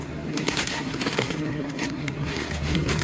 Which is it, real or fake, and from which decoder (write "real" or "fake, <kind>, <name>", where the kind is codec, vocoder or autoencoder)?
fake, codec, SNAC